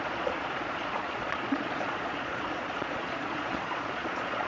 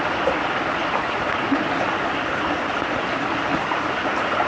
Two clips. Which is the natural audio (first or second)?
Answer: second